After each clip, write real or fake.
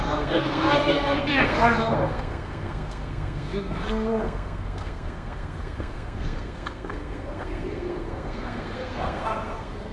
fake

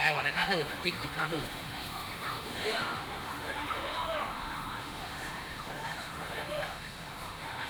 fake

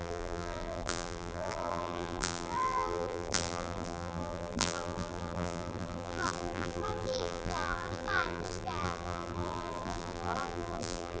fake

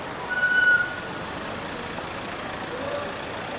real